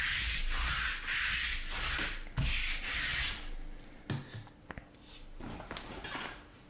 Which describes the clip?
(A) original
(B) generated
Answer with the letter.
A